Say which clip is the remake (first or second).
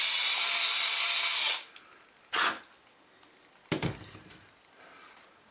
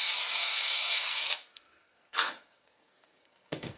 second